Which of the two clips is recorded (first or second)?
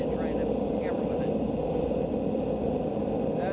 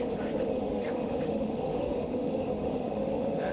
first